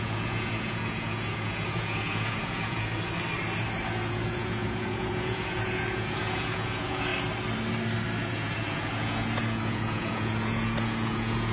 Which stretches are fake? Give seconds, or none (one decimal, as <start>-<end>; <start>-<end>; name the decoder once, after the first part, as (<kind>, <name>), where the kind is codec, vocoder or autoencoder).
0.0-2.9 (vocoder, Vocos); 3.9-7.1; 8.2-11.5